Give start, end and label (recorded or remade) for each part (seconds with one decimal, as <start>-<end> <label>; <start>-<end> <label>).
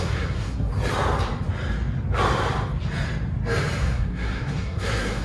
0.0-0.7 remade; 0.7-3.8 recorded; 3.8-5.2 remade